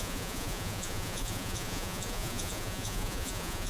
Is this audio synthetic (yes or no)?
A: yes